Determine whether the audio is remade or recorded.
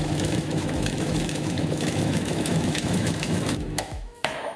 remade